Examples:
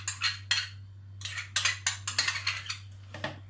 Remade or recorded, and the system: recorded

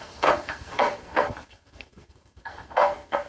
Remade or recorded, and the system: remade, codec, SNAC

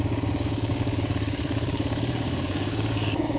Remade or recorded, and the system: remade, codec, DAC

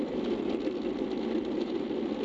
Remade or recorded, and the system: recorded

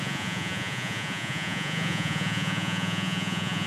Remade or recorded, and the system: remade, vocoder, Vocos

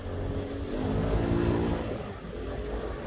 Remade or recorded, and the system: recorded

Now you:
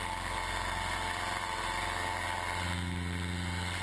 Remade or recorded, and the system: recorded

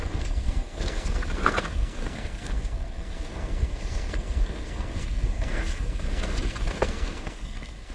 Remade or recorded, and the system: remade, codec, SNAC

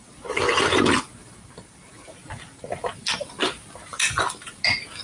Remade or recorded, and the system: recorded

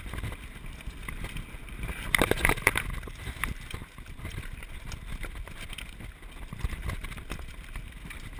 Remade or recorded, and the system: recorded